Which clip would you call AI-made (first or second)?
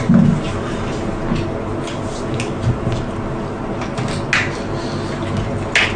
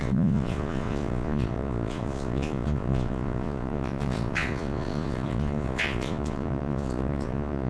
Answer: second